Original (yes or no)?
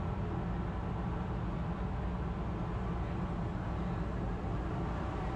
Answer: yes